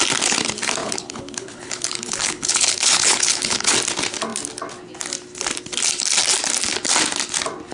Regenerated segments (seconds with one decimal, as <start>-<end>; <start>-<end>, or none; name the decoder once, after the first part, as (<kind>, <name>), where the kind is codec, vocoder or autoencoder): 0.8-3.7 (codec, HILCodec)